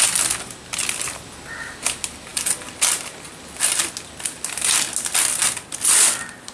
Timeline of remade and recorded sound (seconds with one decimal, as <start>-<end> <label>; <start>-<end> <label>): 0.0-6.5 recorded